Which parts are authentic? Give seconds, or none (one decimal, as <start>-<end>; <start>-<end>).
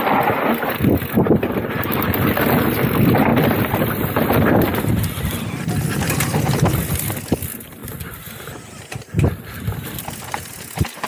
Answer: 0.0-11.1